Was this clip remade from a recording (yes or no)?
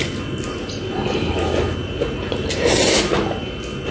no